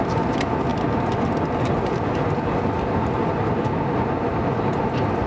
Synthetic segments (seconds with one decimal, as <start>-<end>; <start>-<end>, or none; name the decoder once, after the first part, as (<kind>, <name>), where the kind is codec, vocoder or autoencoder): none